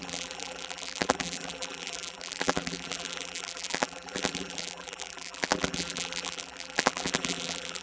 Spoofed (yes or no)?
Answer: yes